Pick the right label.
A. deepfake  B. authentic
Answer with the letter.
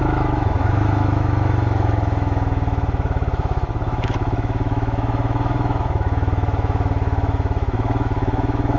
A